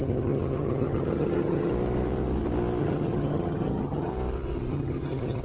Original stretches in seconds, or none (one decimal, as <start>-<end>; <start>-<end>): 1.7-2.8; 4.1-4.7